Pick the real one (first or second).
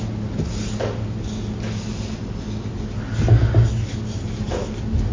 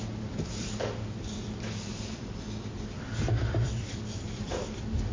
first